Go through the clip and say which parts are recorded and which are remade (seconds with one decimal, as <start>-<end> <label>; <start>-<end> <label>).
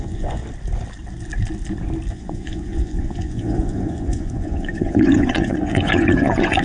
0.0-0.4 remade; 0.4-2.1 recorded; 2.1-6.6 remade